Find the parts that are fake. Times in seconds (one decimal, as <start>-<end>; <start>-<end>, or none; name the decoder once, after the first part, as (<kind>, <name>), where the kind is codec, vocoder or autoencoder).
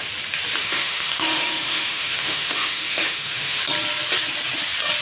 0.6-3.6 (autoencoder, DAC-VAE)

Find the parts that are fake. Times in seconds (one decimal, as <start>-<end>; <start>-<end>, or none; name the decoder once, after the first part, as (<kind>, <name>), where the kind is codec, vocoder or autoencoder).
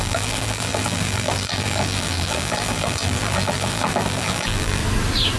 0.0-4.8 (vocoder, BigVGAN v2)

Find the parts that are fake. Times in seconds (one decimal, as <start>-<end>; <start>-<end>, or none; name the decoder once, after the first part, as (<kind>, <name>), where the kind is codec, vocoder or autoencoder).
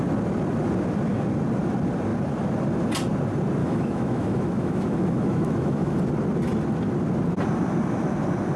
3.6-6.0 (autoencoder, DAC-VAE)